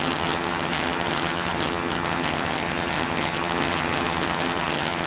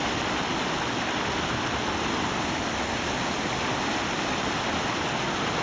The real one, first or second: second